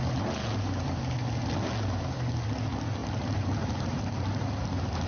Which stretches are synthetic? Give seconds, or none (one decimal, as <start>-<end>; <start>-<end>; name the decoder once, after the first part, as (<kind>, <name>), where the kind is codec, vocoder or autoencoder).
3.0-4.5 (vocoder, BigVGAN v2)